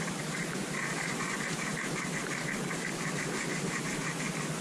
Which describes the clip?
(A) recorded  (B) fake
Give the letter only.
A